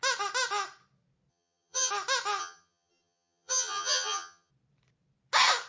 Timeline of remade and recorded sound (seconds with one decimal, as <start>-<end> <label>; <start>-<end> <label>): 0.0-1.3 recorded; 1.3-1.9 remade; 1.9-2.4 recorded; 2.4-4.5 remade; 4.5-5.7 recorded